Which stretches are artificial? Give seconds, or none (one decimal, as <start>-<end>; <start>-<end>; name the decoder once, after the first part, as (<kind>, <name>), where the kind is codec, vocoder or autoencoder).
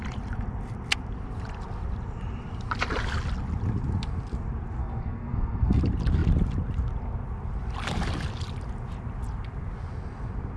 4.8-5.8 (codec, SNAC)